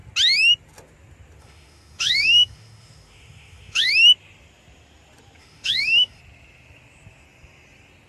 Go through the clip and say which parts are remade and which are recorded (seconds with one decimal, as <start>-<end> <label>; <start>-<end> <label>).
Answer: 0.0-1.4 recorded; 1.4-3.9 remade; 3.9-5.4 recorded; 5.4-6.2 remade; 6.2-8.1 recorded